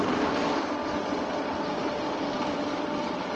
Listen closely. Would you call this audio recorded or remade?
recorded